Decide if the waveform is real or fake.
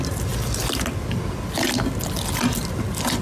real